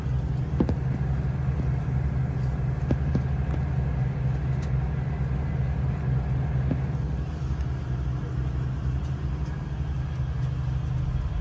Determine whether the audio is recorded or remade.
recorded